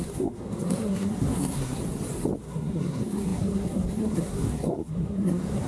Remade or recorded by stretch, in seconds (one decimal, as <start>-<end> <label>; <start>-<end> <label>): 0.0-1.8 remade; 1.8-2.4 recorded; 2.4-5.7 remade

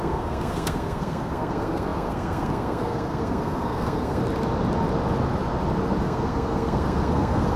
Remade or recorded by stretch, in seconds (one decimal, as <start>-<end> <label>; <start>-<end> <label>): 0.0-4.2 remade; 4.2-6.0 recorded; 6.0-7.6 remade

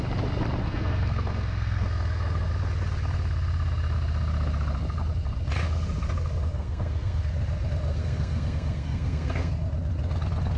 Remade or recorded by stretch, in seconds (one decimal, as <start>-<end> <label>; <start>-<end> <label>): 0.0-0.6 recorded; 0.6-2.5 remade; 2.5-6.5 recorded; 6.5-7.2 remade; 7.2-7.9 recorded; 7.9-9.5 remade; 9.5-10.6 recorded

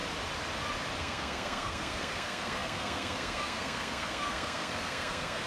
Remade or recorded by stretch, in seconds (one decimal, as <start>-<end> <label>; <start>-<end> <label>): 0.0-1.0 recorded; 1.0-5.5 remade

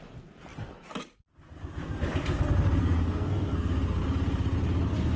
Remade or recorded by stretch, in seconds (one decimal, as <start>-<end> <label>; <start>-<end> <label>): 0.0-2.8 recorded; 2.8-3.7 remade; 3.7-5.2 recorded

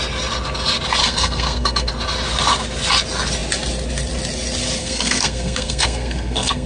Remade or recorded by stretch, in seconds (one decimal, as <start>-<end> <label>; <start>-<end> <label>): 0.0-1.0 recorded; 1.0-1.9 remade; 1.9-4.8 recorded; 4.8-6.7 remade

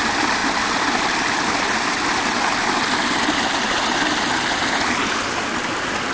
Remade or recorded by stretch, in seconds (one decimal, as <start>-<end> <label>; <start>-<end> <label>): 0.0-6.1 recorded

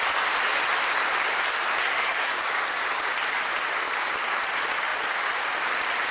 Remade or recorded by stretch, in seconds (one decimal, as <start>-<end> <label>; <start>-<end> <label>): 0.0-1.8 recorded; 1.8-2.3 remade; 2.3-6.1 recorded